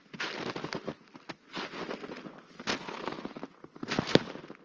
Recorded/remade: recorded